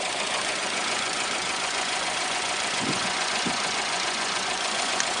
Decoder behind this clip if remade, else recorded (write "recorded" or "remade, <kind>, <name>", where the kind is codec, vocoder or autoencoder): remade, vocoder, Vocos